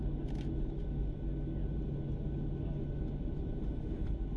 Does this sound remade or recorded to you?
recorded